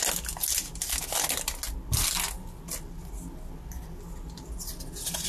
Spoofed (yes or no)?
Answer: no